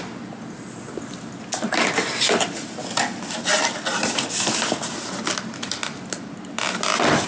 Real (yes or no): yes